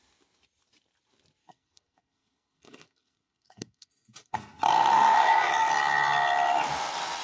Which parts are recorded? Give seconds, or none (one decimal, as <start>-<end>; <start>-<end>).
0.0-1.4; 5.7-7.2